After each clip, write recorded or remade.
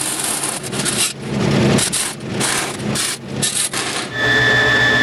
recorded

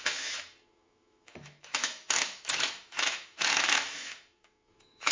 remade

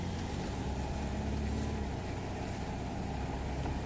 recorded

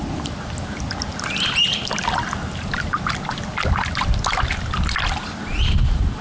recorded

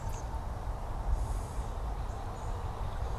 recorded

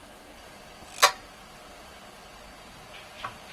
remade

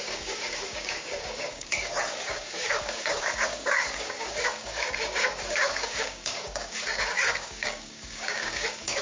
remade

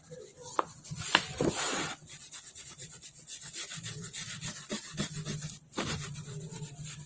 recorded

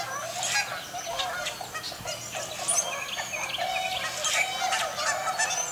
recorded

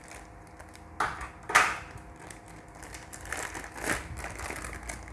recorded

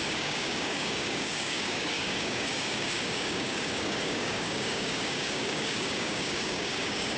remade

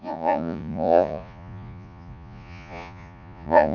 remade